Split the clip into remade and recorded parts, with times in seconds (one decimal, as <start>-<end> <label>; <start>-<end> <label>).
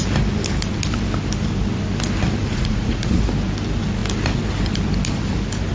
0.0-2.4 recorded; 2.4-3.2 remade; 3.2-5.7 recorded